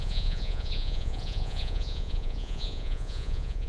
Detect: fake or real fake